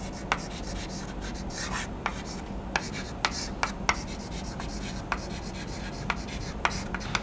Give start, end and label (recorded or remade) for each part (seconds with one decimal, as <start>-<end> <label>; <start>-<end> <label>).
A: 0.0-7.2 recorded